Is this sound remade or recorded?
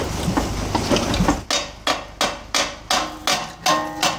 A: recorded